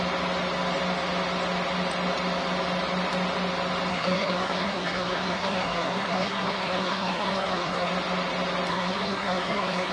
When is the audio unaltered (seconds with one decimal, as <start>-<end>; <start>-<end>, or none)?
0.0-3.9; 7.9-8.7